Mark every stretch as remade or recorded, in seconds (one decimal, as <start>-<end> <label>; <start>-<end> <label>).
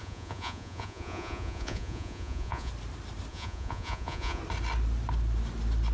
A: 0.0-2.7 remade; 2.7-3.3 recorded; 3.3-4.4 remade; 4.4-5.9 recorded